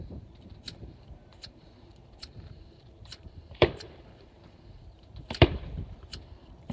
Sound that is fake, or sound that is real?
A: fake